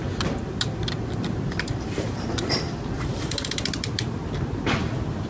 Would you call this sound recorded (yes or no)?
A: no